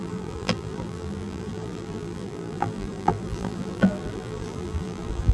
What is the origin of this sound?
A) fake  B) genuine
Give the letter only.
A